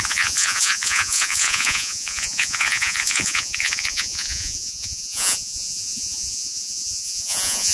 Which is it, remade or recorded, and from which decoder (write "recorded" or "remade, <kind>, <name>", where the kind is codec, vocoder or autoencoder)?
remade, vocoder, Vocos